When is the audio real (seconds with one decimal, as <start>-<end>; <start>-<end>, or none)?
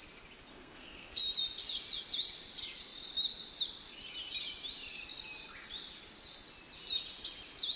0.0-0.5; 1.2-7.8